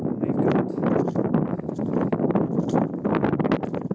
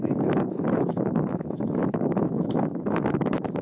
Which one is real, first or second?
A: first